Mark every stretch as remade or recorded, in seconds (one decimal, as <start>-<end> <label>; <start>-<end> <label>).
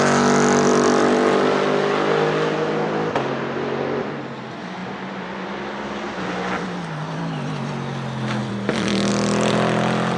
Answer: 0.0-8.4 recorded; 8.4-9.1 remade; 9.1-10.2 recorded